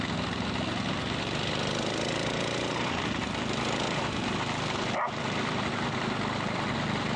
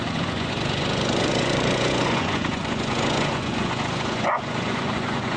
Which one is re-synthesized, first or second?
second